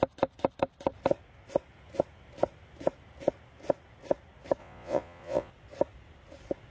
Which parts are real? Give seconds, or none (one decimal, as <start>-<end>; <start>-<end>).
0.0-4.6; 5.5-6.7